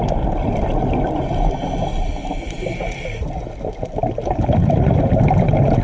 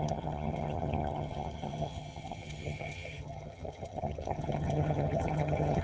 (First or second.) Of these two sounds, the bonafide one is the first